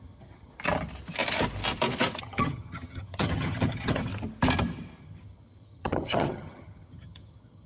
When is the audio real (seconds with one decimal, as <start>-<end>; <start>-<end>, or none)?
0.5-2.2; 4.1-5.0